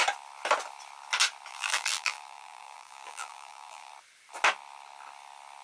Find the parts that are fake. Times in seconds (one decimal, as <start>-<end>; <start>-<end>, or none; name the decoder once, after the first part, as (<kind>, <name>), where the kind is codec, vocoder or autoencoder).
1.5-3.9 (vocoder, BigVGAN v2)